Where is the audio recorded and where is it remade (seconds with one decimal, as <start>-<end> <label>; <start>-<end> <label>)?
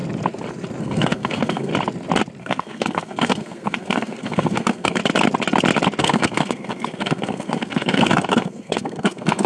0.0-0.8 recorded; 0.8-1.7 remade; 1.7-2.4 recorded; 2.4-5.0 remade; 5.0-6.0 recorded; 6.0-9.5 remade